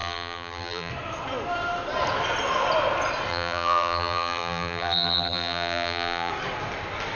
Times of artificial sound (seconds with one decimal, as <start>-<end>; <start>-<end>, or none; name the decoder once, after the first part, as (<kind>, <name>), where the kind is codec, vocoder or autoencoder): 0.0-0.9 (vocoder, BigVGAN v2); 3.3-6.3

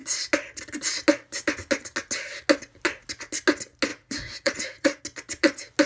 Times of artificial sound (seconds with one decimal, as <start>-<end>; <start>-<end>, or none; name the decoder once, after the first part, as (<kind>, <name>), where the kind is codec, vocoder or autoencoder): 3.9-5.0 (vocoder, Vocos)

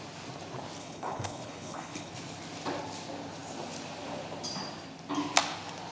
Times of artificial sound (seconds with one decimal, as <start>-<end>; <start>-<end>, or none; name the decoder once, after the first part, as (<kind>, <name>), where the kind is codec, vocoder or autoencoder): 0.8-2.1 (codec, HILCodec)

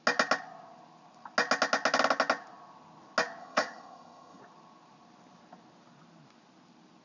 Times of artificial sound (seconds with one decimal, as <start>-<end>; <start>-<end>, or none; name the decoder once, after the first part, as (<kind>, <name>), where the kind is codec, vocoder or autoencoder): 3.4-4.4 (vocoder, HiFi-GAN)

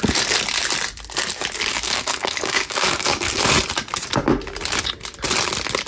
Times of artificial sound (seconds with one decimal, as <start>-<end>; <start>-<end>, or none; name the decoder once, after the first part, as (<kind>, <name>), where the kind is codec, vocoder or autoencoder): 1.7-3.4 (codec, DAC)

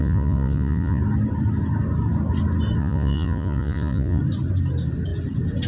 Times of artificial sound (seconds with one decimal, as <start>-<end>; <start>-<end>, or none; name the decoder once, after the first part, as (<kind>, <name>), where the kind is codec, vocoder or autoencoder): 0.0-1.0 (vocoder, Vocos); 2.8-4.2

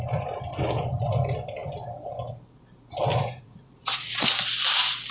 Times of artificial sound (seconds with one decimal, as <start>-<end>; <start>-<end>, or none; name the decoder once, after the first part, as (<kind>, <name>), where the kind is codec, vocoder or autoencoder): 3.1-4.3 (vocoder, Vocos)